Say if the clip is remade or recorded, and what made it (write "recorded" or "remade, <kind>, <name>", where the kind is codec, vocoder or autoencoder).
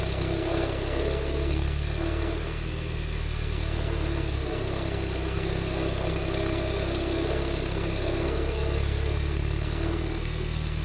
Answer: remade, codec, SNAC